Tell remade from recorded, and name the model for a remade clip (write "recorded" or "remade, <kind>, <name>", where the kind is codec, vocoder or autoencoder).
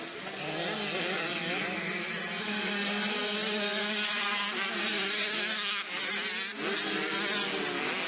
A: recorded